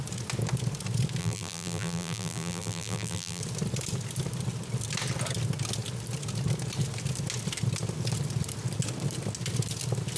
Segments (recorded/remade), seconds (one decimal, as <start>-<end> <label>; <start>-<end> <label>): 0.0-1.2 recorded; 1.2-3.4 remade; 3.4-10.2 recorded